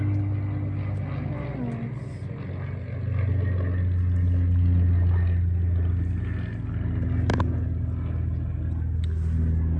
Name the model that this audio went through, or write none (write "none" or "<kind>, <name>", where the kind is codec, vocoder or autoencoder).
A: none